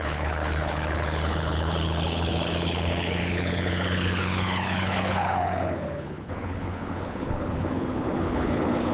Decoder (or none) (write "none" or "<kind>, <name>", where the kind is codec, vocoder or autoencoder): codec, HILCodec